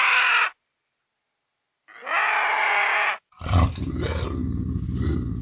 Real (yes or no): yes